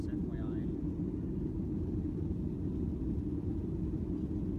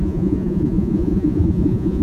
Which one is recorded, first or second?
first